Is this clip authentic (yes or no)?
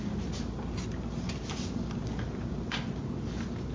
yes